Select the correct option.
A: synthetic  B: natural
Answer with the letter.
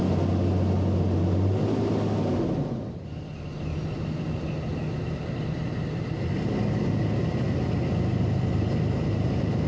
B